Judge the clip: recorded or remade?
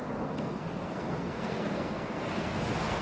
remade